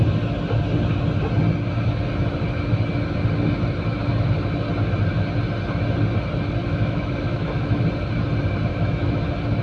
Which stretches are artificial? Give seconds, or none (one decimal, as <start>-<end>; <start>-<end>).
6.6-7.8; 8.7-9.2